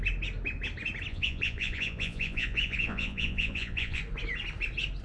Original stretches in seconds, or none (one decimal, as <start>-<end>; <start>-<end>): 0.0-1.1; 4.0-5.0